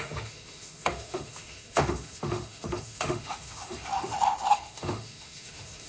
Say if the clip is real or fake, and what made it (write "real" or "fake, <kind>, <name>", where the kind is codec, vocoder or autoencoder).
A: fake, autoencoder, DAC-VAE